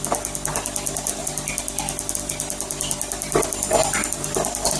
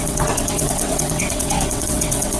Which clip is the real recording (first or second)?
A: first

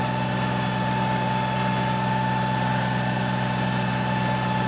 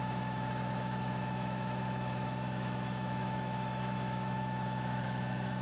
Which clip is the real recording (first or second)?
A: first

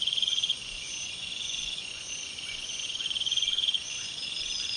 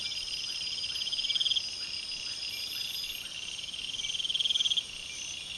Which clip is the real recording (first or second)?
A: second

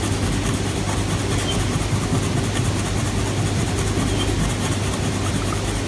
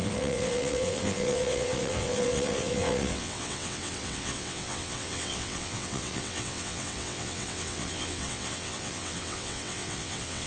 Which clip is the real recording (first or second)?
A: first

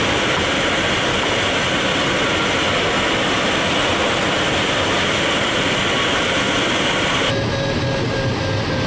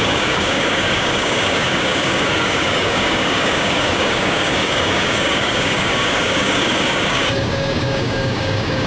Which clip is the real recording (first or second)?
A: first